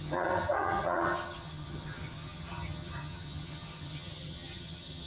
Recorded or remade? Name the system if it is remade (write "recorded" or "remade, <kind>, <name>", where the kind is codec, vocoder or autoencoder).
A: remade, vocoder, HiFi-GAN